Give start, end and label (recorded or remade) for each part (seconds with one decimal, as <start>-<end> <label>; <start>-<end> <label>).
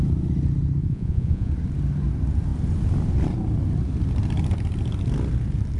0.0-0.8 recorded; 0.8-1.5 remade; 1.5-5.8 recorded